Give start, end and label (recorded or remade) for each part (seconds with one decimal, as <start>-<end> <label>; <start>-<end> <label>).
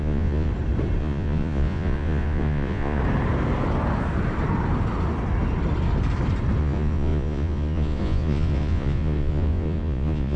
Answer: 0.0-0.5 remade; 0.5-1.0 recorded; 1.0-3.0 remade; 3.0-6.6 recorded; 6.6-10.4 remade